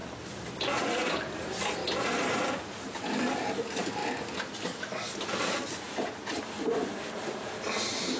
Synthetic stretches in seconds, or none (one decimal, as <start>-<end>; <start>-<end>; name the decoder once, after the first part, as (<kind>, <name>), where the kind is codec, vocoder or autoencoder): 1.0-1.8 (vocoder, BigVGAN v2); 3.2-4.0; 6.4-8.2